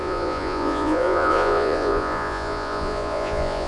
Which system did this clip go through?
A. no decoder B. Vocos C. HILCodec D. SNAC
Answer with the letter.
B